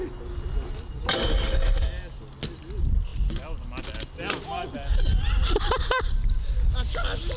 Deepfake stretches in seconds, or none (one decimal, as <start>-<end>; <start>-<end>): 3.1-3.8